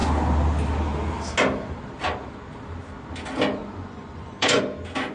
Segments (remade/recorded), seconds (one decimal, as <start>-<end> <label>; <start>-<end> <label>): 0.0-3.6 recorded; 3.6-4.6 remade; 4.6-5.1 recorded

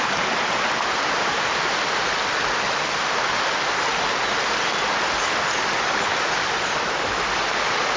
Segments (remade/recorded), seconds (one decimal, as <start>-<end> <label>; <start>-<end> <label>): 0.0-8.0 recorded

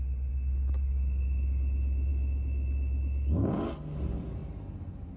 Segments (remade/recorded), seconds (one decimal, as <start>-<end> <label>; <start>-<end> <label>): 0.0-5.2 recorded

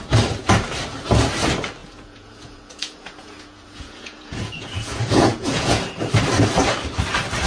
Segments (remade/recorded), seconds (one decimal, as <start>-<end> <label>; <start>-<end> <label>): 0.0-1.8 recorded; 1.8-5.8 remade; 5.8-7.5 recorded

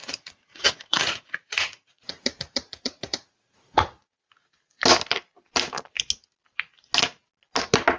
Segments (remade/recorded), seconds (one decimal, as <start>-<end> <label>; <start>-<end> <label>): 0.0-4.5 remade; 4.5-8.0 recorded

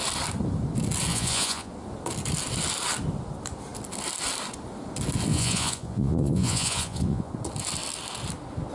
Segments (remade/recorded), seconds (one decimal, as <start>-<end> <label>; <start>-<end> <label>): 0.0-1.1 recorded; 1.1-1.7 remade; 1.7-5.3 recorded; 5.3-7.3 remade; 7.3-8.7 recorded